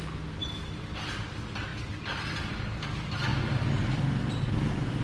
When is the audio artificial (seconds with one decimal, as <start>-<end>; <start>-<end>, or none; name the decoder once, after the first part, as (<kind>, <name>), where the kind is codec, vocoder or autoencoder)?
none